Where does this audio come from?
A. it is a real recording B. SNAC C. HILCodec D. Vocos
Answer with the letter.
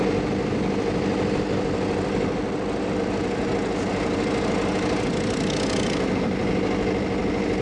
A